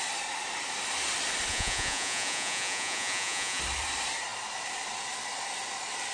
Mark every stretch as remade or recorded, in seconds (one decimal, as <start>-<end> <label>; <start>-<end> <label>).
0.0-1.5 recorded; 1.5-3.6 remade; 3.6-6.1 recorded